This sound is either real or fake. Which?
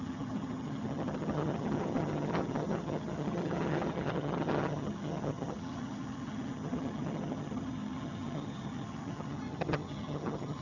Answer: fake